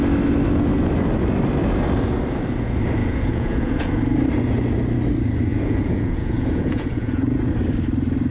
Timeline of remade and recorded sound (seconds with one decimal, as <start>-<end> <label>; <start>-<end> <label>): 0.0-3.0 recorded; 3.0-4.0 remade; 4.0-5.5 recorded; 5.5-7.5 remade; 7.5-8.3 recorded